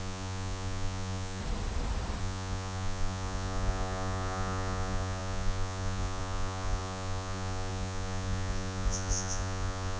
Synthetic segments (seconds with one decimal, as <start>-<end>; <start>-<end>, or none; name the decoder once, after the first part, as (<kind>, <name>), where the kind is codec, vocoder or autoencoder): 0.0-1.4 (vocoder, Vocos); 2.2-10.0